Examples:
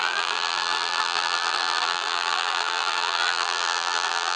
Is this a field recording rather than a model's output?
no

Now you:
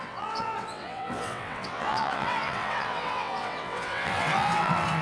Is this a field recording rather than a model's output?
no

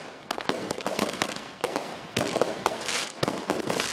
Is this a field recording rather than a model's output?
no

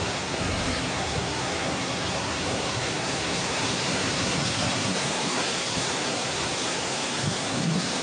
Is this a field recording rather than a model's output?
no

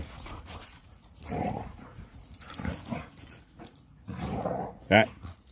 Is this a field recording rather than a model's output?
no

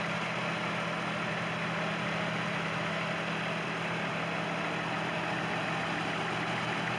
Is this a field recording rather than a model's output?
yes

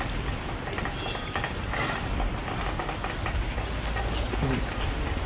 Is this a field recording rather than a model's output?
yes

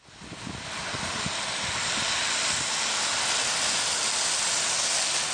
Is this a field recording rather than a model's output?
yes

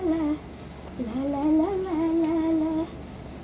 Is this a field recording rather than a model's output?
yes